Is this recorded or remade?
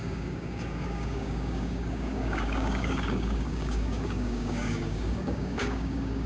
remade